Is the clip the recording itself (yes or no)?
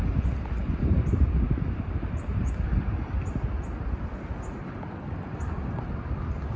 yes